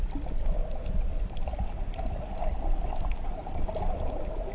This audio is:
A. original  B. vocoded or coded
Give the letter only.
A